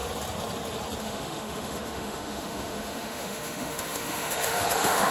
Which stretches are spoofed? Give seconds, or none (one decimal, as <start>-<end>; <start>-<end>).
1.0-5.1

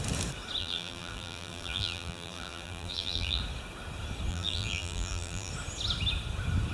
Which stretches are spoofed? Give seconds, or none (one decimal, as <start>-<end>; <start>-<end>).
0.6-3.4; 4.3-5.5

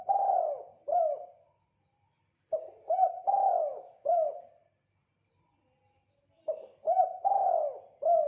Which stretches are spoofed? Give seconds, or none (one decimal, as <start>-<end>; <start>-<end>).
3.7-4.3

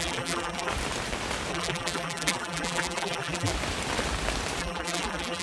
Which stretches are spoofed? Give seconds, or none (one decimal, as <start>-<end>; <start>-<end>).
0.0-0.7; 1.5-3.5; 4.6-5.4

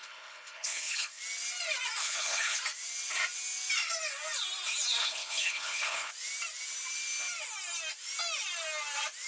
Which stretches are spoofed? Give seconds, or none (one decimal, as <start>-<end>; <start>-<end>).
0.0-1.2; 2.0-2.6; 5.0-6.1

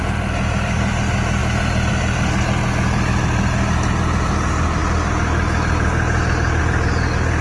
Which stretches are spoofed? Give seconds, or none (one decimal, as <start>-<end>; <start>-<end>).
none

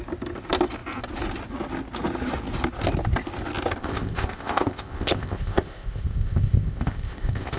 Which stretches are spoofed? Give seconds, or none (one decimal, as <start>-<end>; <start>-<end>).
3.8-7.6

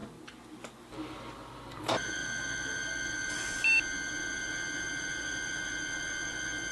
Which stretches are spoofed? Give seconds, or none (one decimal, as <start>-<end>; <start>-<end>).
none